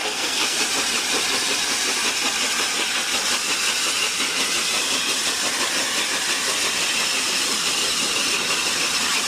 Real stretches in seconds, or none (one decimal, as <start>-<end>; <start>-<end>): 0.6-9.3